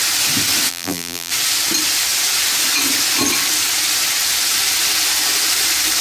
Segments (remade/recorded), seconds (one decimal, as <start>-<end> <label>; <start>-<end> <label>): 0.0-0.7 recorded; 0.7-1.3 remade; 1.3-6.0 recorded